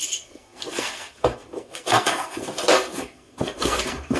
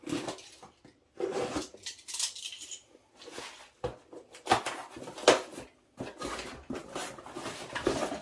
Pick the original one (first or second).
second